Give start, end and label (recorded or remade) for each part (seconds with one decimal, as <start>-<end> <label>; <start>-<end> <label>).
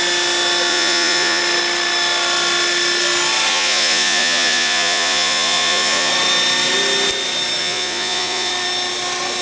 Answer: 0.0-0.7 recorded; 0.7-1.4 remade; 1.4-3.5 recorded; 3.5-6.1 remade; 6.1-7.6 recorded; 7.6-8.5 remade; 8.5-9.4 recorded